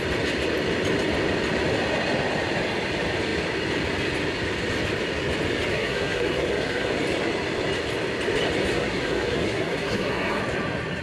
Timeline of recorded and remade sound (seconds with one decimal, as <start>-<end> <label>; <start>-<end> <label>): 0.0-5.7 recorded; 5.7-6.9 remade; 6.9-8.7 recorded; 8.7-10.4 remade; 10.4-11.0 recorded